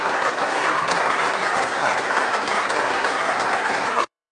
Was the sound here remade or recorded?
remade